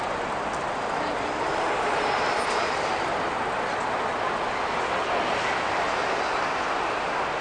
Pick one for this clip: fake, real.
real